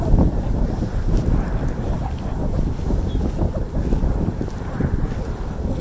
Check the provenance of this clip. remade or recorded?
remade